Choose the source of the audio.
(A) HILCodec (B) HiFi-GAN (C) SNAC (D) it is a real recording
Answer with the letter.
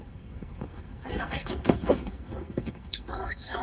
C